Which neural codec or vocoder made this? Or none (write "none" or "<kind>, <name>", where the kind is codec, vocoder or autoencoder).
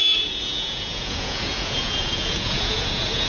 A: vocoder, Vocos